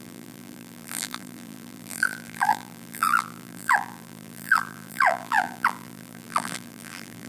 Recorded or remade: remade